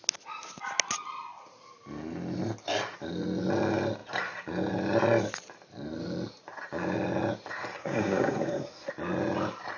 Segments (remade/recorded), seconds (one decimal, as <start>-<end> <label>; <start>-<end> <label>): 0.0-7.8 recorded; 7.8-8.9 remade; 8.9-9.8 recorded